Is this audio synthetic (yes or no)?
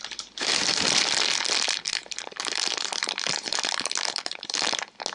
no